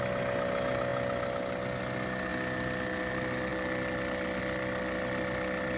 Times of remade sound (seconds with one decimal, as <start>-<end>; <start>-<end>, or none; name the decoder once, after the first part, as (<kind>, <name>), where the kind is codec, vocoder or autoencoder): none